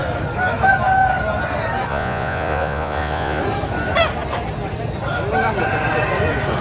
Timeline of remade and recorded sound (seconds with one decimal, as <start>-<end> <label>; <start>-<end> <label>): 0.0-1.9 recorded; 1.9-3.4 remade; 3.4-6.6 recorded